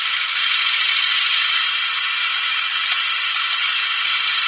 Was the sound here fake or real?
real